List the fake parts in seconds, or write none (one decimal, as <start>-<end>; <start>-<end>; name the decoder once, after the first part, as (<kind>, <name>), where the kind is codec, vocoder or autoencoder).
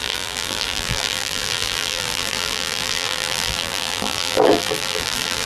0.0-5.5 (vocoder, BigVGAN v2)